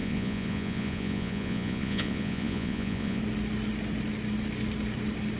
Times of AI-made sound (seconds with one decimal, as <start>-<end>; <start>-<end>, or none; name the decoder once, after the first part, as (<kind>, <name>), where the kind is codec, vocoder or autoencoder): 0.0-3.2 (vocoder, Vocos)